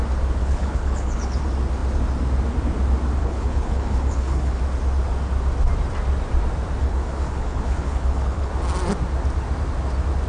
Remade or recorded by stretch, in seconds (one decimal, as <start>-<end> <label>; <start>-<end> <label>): 0.0-0.4 recorded; 0.4-1.4 remade; 1.4-3.2 recorded; 3.2-4.6 remade; 4.6-6.8 recorded; 6.8-8.5 remade; 8.5-10.3 recorded